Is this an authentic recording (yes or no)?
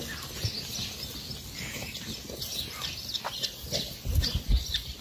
yes